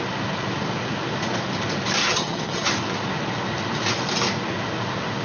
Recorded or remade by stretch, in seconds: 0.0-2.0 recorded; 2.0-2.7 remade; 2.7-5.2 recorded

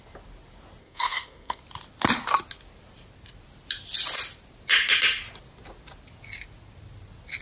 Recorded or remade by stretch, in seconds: 0.0-0.8 recorded; 0.8-1.6 remade; 1.6-7.4 recorded

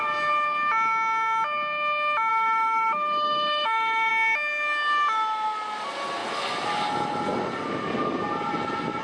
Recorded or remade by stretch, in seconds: 0.0-2.3 recorded; 2.3-4.1 remade; 4.1-9.0 recorded